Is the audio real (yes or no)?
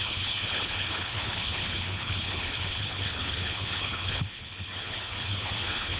no